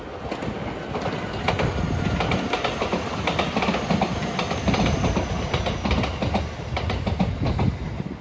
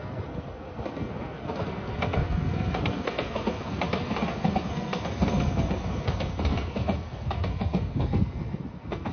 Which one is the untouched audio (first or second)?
first